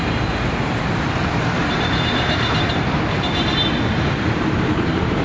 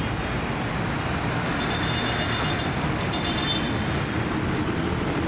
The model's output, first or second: first